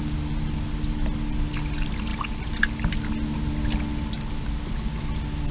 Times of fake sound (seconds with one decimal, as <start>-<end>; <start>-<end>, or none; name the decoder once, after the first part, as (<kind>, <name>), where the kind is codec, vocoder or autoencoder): none